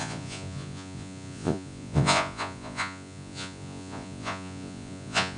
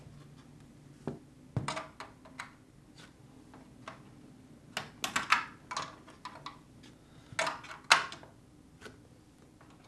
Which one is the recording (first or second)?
second